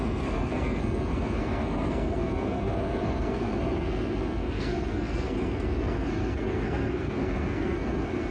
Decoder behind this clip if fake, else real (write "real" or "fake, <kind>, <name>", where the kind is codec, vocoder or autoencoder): fake, codec, SNAC